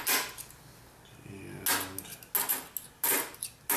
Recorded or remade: recorded